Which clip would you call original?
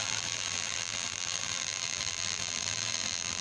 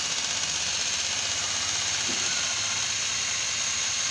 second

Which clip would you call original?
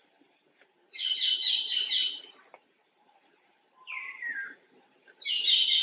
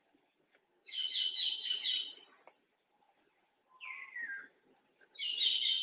second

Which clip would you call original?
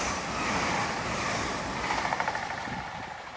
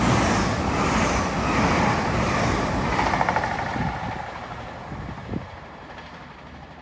second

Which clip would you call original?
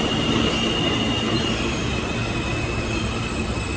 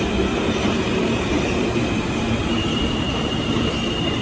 first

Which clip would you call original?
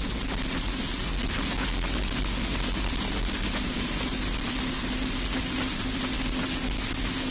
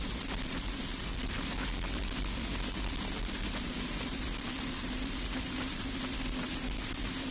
first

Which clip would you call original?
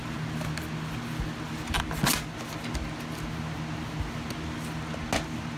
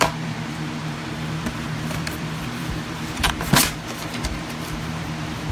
first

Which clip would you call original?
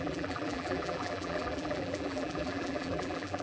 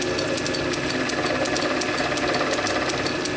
second